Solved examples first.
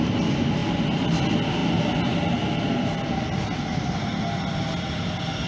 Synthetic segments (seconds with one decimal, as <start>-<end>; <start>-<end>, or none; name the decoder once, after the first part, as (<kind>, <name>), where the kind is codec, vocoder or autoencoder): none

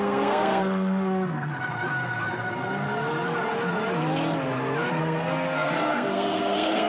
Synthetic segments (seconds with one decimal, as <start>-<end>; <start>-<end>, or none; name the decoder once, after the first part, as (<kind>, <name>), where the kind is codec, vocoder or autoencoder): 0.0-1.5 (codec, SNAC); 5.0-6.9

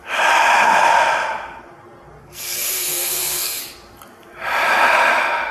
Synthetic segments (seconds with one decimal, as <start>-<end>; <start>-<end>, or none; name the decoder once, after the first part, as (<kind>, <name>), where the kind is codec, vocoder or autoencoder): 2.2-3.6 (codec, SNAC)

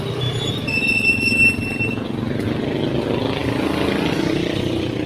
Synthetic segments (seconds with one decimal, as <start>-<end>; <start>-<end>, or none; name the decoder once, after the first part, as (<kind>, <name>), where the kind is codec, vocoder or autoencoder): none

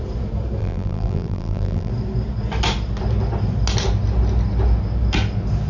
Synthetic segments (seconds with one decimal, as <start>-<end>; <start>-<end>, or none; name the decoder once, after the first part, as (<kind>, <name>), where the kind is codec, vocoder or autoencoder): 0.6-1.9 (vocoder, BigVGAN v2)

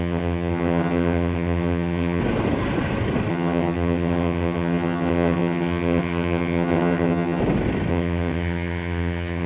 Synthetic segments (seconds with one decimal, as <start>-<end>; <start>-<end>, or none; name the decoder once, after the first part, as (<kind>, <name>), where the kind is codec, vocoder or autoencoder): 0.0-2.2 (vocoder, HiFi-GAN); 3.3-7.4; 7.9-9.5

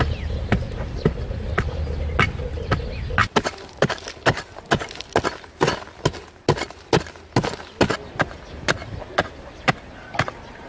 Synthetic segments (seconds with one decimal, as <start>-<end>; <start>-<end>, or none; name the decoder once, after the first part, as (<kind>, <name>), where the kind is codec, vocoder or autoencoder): none